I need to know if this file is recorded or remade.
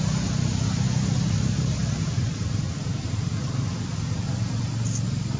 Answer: recorded